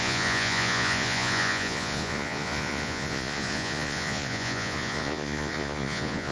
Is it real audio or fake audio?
fake